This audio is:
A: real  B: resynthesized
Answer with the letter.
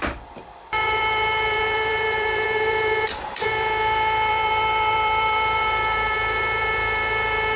B